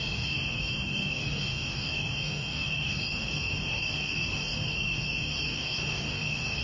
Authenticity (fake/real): fake